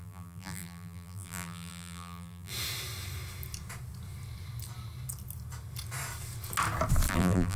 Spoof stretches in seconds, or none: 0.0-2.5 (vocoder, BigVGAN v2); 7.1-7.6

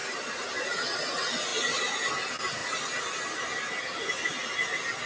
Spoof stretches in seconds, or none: 0.0-0.6 (vocoder, BigVGAN v2)